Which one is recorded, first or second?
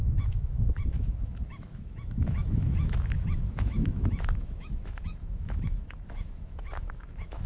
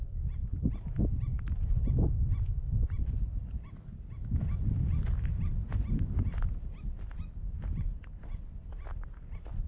second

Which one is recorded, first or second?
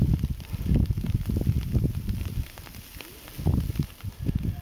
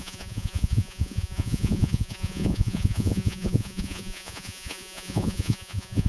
first